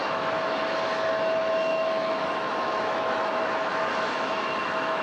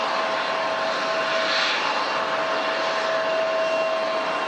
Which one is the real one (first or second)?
second